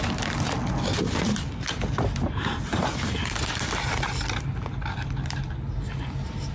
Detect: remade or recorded recorded